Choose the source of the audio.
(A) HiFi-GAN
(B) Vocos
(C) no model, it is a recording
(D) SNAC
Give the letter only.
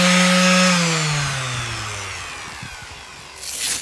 C